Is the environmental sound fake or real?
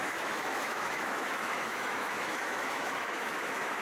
fake